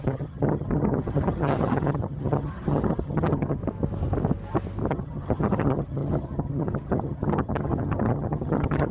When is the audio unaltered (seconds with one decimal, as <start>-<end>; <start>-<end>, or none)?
3.6-4.9